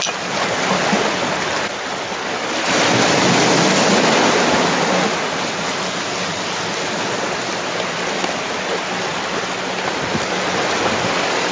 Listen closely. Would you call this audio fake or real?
real